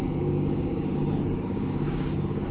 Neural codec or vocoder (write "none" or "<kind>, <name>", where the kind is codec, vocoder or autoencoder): codec, DAC